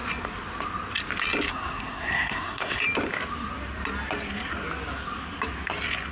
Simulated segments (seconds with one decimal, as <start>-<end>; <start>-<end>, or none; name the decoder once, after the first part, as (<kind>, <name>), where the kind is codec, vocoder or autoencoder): 1.5-2.8 (codec, SNAC)